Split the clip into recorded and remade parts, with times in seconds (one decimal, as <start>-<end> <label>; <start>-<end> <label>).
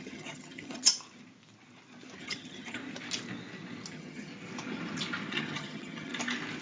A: 0.0-0.9 remade; 0.9-2.2 recorded; 2.2-2.8 remade; 2.8-3.9 recorded; 3.9-4.3 remade; 4.3-5.3 recorded; 5.3-6.1 remade; 6.1-6.6 recorded